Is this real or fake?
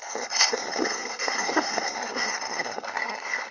fake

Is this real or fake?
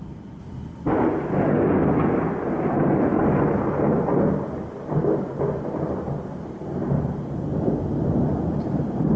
real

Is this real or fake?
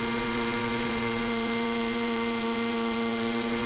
fake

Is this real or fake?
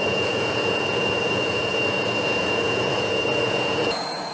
fake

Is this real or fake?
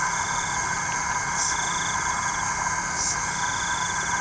real